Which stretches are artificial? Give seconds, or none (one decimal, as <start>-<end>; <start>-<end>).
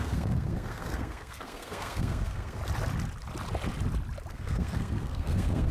0.0-2.6; 4.3-5.7